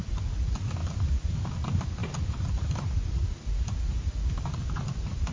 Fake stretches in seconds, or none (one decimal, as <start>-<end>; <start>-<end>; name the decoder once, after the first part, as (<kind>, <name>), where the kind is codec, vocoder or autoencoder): none